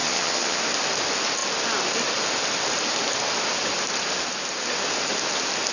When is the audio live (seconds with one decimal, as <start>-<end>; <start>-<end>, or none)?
0.6-5.7